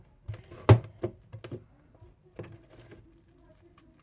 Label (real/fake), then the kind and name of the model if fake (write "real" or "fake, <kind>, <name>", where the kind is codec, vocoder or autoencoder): real